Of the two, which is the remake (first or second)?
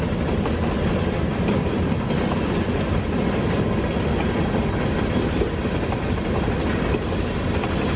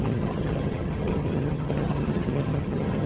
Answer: second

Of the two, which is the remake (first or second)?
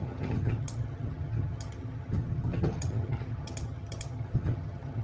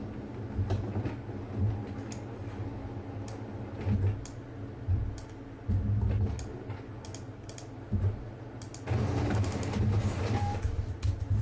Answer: first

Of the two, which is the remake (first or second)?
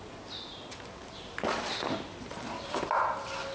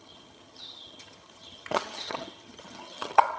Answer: second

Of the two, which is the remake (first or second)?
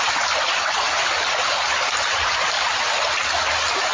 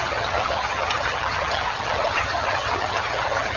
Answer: second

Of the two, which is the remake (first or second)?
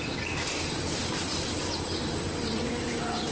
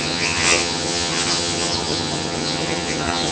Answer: second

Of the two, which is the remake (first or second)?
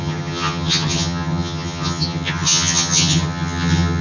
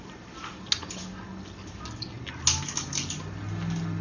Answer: first